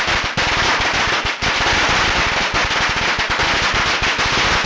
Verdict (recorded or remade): recorded